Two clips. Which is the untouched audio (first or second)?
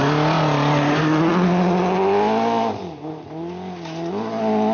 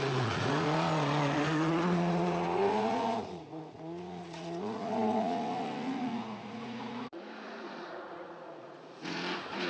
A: first